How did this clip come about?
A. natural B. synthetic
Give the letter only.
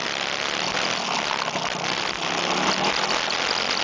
A